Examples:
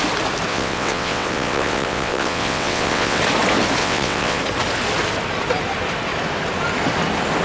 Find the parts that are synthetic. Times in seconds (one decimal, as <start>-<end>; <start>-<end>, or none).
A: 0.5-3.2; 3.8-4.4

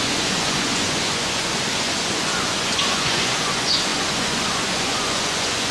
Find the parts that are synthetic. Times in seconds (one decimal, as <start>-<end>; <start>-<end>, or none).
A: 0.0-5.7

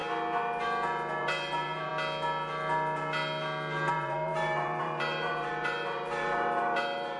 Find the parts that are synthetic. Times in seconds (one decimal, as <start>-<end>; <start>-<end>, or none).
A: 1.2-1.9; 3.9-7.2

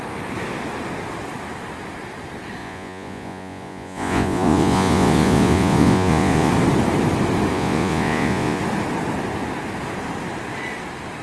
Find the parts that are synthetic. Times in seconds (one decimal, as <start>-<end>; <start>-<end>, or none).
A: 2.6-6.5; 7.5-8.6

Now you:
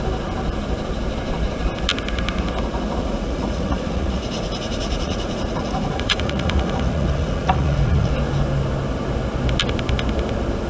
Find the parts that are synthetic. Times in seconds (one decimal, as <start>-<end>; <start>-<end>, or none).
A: 3.0-8.1